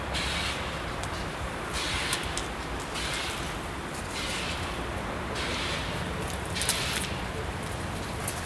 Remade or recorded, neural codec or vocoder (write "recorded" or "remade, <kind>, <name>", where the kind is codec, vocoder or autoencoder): recorded